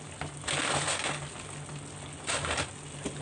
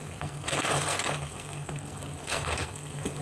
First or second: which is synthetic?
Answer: second